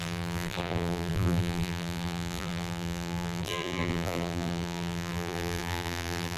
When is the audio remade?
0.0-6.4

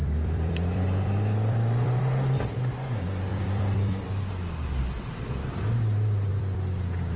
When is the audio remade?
0.0-2.0; 3.3-4.8; 6.3-6.8

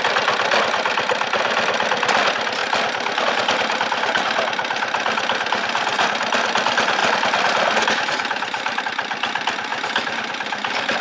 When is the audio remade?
7.0-8.8; 9.7-10.3